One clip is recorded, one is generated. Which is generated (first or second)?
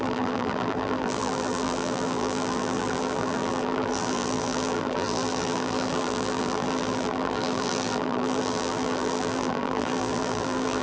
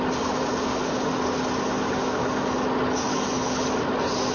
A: first